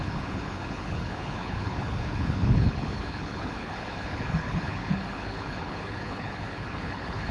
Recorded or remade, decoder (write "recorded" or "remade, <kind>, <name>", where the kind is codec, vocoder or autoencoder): remade, codec, HILCodec